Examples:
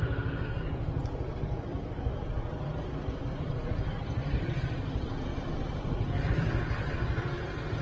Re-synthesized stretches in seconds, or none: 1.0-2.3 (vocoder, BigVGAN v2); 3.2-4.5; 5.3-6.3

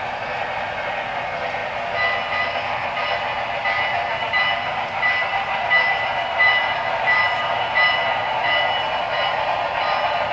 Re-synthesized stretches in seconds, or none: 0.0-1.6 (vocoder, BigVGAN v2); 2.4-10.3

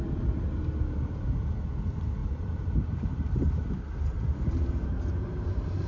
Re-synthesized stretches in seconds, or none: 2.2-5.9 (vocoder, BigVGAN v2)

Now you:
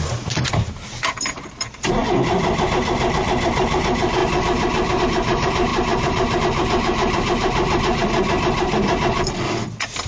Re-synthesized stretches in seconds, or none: 0.0-2.0 (vocoder, BigVGAN v2); 3.1-4.2; 5.0-8.0

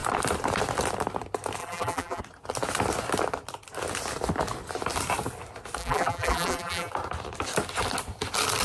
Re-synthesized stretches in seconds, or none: 1.6-2.2 (vocoder, BigVGAN v2); 5.8-6.9